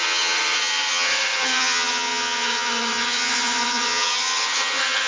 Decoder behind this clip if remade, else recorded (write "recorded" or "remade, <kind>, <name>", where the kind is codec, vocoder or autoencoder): remade, vocoder, HiFi-GAN